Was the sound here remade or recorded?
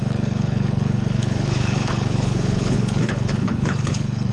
remade